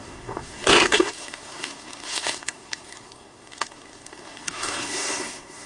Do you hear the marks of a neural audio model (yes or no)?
yes